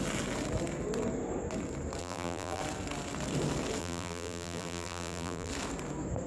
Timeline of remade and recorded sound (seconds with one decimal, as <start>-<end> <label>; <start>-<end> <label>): 0.0-2.0 recorded; 2.0-2.6 remade; 2.6-3.8 recorded; 3.8-5.5 remade; 5.5-6.3 recorded